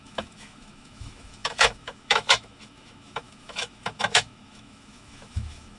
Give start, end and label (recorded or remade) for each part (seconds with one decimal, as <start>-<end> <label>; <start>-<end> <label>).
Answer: 0.0-5.8 remade